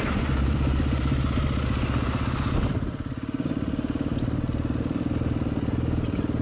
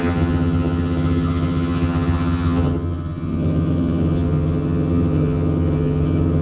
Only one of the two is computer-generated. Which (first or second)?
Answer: second